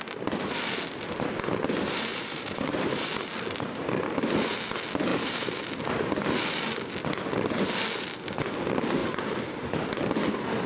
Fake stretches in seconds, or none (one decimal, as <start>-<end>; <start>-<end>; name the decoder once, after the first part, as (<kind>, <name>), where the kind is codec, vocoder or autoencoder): 2.1-3.1 (vocoder, BigVGAN v2); 9.0-9.9